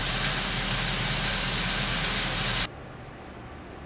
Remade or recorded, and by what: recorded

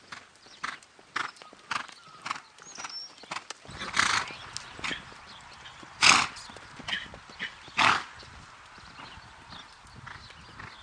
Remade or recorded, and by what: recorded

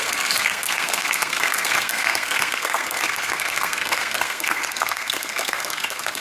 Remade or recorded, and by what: remade, codec, SNAC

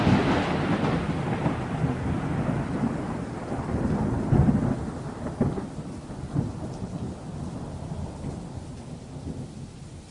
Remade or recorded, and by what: recorded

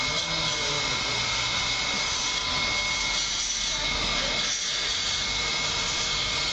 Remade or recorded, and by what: recorded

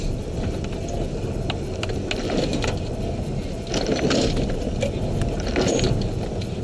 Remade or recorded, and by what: recorded